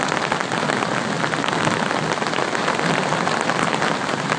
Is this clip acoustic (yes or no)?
yes